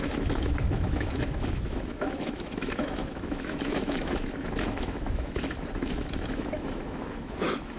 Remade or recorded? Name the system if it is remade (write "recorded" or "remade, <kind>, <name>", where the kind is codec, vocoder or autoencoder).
remade, autoencoder, DAC-VAE